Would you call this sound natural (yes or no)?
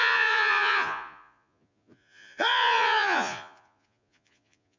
no